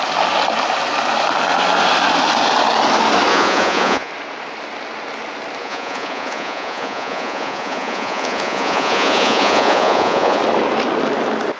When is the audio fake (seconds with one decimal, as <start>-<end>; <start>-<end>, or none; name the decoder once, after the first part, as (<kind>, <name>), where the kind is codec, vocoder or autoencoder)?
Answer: 3.3-4.1 (vocoder, Vocos); 5.6-10.4